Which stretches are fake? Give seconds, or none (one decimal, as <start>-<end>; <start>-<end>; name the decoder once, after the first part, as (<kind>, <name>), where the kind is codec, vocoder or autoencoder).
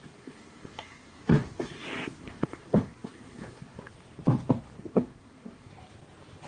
0.0-3.9 (codec, SNAC); 4.9-5.7